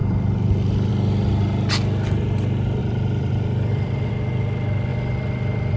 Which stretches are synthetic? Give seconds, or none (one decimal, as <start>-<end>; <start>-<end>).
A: 0.0-0.9; 2.8-4.1; 4.9-5.8